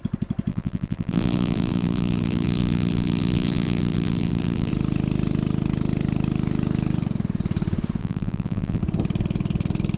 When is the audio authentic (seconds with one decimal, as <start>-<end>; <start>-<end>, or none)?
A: 0.0-0.5; 4.7-8.0; 8.8-10.0